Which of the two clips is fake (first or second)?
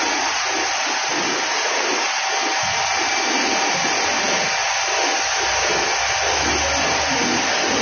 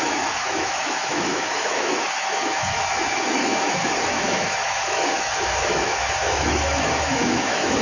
second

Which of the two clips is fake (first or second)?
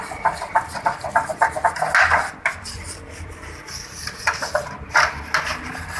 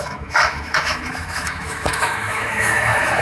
second